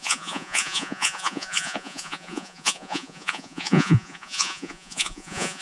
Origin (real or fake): fake